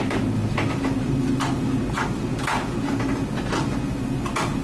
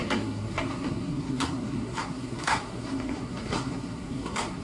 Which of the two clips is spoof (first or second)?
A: second